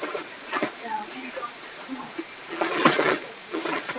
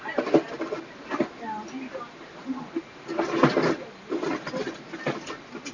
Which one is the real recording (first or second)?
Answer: second